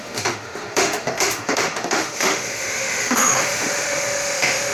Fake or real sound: fake